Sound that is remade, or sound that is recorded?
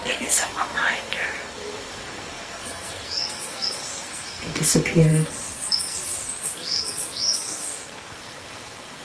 remade